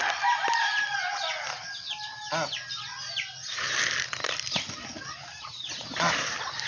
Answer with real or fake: real